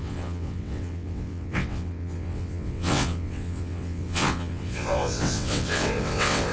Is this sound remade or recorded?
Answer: remade